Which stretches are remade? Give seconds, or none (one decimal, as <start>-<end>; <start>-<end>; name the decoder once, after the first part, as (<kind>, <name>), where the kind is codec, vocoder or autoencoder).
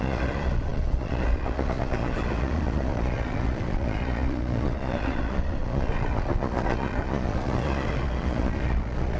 0.0-9.2 (vocoder, Vocos)